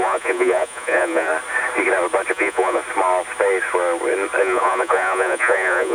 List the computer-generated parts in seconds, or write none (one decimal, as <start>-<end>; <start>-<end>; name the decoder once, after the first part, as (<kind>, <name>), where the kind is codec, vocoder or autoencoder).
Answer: 0.0-1.3 (vocoder, Vocos); 2.3-2.8; 4.4-5.9